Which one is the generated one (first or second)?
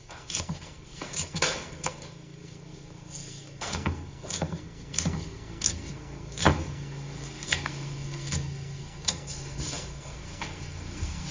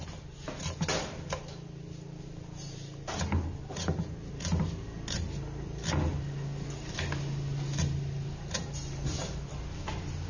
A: first